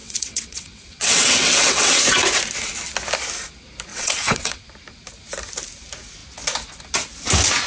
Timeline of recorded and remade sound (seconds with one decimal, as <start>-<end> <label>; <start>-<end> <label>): 0.0-2.0 remade; 2.0-3.9 recorded; 3.9-4.6 remade; 4.6-7.7 recorded